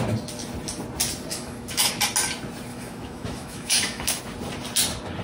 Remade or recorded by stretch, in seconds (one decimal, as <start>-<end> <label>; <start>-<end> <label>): 0.0-1.3 recorded; 1.3-1.9 remade; 1.9-2.7 recorded; 2.7-4.2 remade; 4.2-5.2 recorded